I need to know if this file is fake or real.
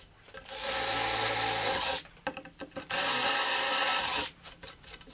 real